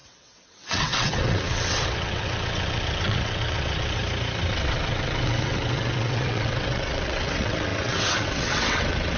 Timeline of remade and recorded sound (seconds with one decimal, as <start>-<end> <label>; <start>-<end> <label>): 0.0-4.0 remade; 4.0-4.5 recorded; 4.5-9.2 remade